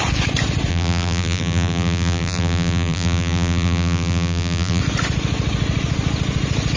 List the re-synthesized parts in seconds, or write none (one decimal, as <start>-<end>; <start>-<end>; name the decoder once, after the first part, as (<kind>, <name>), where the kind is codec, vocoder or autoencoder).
0.7-4.8 (vocoder, BigVGAN v2)